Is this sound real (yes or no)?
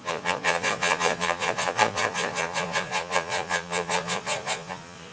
no